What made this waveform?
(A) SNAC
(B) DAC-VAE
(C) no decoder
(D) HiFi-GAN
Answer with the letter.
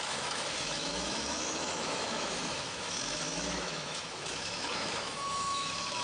B